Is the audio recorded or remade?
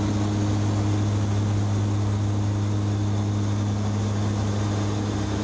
recorded